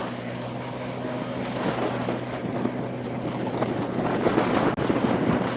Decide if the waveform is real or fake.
real